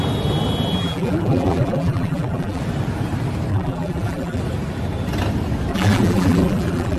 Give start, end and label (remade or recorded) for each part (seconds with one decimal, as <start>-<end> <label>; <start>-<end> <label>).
0.0-0.8 recorded; 0.8-2.6 remade; 2.6-3.5 recorded; 3.5-4.4 remade; 4.4-5.7 recorded; 5.7-7.0 remade